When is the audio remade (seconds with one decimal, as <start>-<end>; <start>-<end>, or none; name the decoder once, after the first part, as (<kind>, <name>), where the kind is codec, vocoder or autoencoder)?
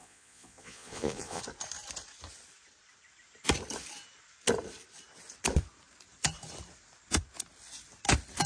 0.0-1.4 (vocoder, Vocos)